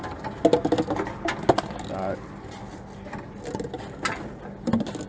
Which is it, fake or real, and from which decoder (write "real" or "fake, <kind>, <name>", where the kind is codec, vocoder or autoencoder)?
real